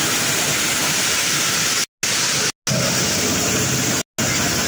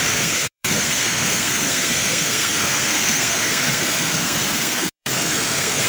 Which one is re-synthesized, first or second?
second